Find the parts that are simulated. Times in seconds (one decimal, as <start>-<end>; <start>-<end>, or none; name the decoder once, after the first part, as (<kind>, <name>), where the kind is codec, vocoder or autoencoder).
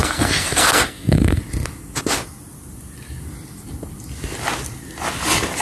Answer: 0.0-1.4 (codec, SNAC)